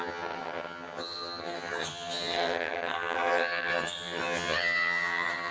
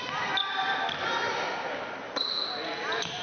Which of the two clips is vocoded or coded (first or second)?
first